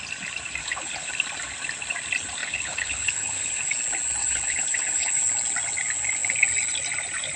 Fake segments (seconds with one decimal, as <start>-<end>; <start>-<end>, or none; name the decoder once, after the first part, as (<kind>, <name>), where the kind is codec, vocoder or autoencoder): 0.6-1.1 (codec, HILCodec); 2.4-3.7; 4.2-5.3